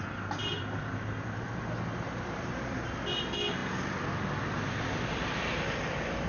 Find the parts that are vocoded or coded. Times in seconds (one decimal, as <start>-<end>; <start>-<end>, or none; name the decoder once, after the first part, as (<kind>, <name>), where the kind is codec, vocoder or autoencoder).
0.4-1.6 (vocoder, BigVGAN v2)